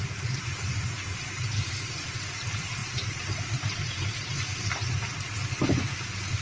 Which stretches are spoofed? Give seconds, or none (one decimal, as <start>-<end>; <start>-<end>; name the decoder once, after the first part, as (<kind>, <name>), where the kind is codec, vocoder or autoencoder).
0.0-3.8 (vocoder, BigVGAN v2); 5.7-6.4